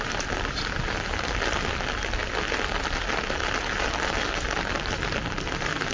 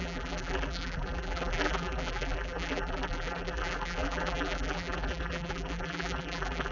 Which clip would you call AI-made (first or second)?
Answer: second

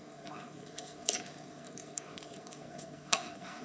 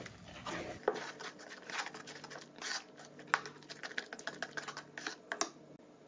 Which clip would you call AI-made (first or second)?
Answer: first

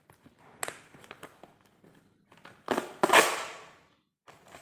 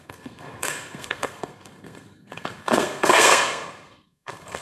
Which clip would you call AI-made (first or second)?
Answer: second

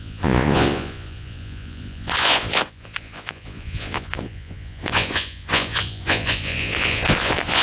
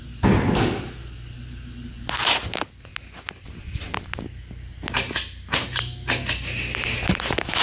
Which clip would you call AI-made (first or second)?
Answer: first